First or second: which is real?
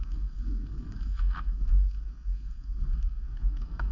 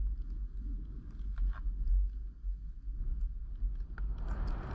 second